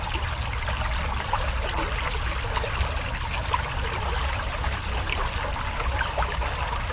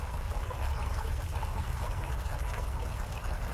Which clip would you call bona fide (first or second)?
first